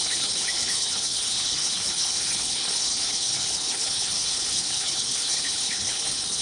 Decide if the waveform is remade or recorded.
remade